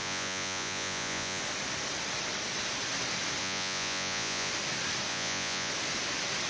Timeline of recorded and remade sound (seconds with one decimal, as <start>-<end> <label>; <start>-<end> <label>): 0.0-1.4 remade; 1.4-3.4 recorded; 3.4-4.5 remade; 4.5-5.1 recorded; 5.1-5.7 remade; 5.7-6.5 recorded